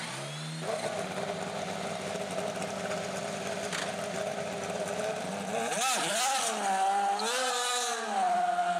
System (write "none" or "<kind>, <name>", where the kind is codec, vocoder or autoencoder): none